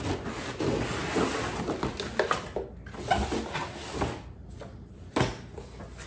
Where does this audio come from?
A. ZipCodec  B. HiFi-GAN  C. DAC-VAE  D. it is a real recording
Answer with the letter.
D